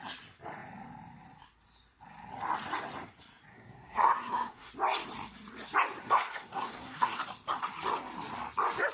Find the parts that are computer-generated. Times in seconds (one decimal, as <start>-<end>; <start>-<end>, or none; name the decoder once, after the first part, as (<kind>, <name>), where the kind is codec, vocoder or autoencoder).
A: 3.5-4.7 (codec, SNAC); 6.0-7.2